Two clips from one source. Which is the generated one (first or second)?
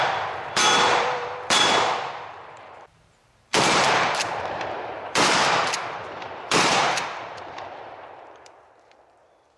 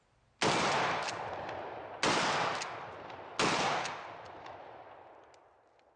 first